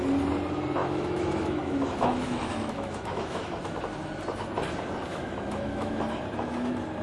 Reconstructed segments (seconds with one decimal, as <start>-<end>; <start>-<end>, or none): 0.8-3.6; 5.1-6.0